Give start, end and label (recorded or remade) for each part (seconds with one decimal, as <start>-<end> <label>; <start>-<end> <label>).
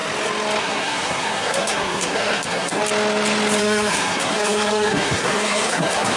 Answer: 0.0-0.6 recorded; 0.6-2.8 remade; 2.8-3.6 recorded; 3.6-6.2 remade